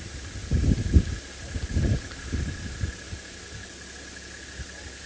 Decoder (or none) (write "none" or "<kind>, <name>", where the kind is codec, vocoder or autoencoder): none